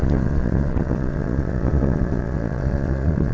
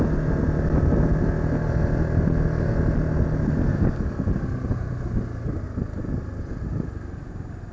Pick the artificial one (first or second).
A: first